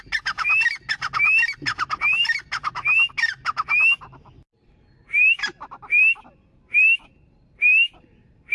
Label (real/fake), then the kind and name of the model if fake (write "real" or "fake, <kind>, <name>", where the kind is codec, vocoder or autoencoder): real